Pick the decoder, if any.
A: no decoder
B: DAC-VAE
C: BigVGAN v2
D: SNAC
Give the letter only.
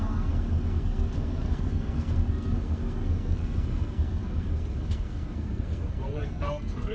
D